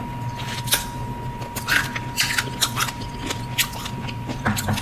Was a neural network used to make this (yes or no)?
no